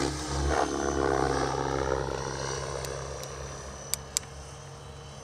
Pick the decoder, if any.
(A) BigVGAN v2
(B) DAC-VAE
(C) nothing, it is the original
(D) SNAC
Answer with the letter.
C